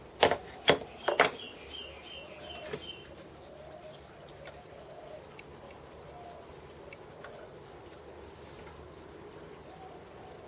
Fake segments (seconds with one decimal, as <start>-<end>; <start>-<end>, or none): none